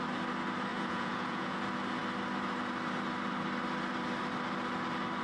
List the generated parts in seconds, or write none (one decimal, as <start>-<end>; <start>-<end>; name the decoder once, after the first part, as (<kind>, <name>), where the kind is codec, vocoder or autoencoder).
0.7-1.6 (vocoder, Vocos)